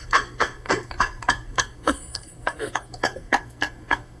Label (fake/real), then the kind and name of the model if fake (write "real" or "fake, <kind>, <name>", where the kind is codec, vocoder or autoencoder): fake, codec, SNAC